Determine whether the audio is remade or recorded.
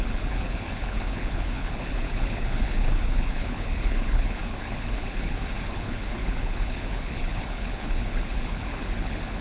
remade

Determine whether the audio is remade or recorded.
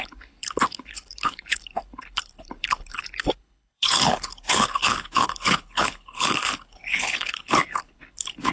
remade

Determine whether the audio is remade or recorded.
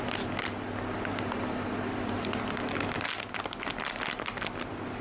recorded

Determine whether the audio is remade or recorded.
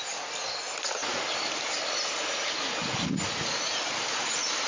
recorded